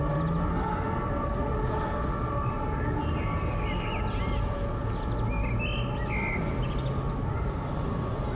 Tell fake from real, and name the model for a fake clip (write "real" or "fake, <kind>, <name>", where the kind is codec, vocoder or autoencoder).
real